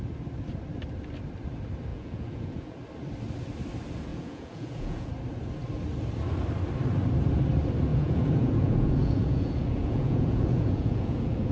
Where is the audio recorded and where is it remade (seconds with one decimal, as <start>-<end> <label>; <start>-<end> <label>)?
0.0-1.9 recorded; 1.9-2.8 remade; 2.8-4.1 recorded; 4.1-5.1 remade; 5.1-7.9 recorded; 7.9-11.5 remade